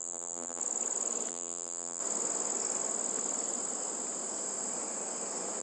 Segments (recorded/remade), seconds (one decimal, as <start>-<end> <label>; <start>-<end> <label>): 0.0-0.6 remade; 0.6-1.3 recorded; 1.3-2.0 remade; 2.0-5.6 recorded